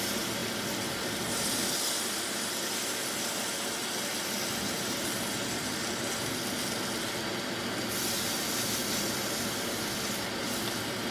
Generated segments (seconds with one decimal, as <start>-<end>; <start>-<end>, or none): none